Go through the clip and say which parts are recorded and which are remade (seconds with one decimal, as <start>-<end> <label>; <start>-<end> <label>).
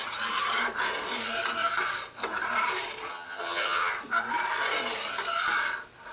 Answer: 0.0-3.1 recorded; 3.1-3.9 remade; 3.9-6.1 recorded